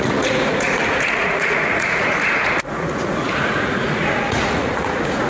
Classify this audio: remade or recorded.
remade